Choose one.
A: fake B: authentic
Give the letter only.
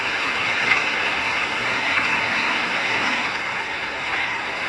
A